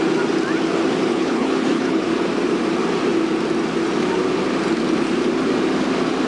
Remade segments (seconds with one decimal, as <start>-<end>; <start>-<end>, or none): 1.1-2.0